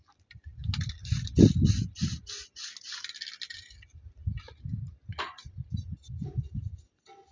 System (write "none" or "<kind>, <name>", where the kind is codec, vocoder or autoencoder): none